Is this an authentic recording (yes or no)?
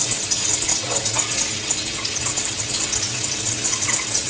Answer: no